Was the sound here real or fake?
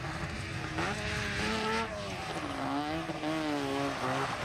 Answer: real